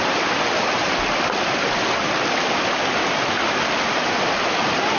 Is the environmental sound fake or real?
real